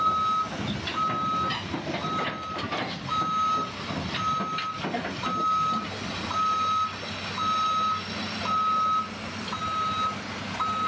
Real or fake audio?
real